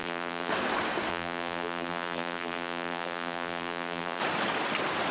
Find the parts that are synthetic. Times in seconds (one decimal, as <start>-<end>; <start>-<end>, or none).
0.0-0.5; 1.1-4.2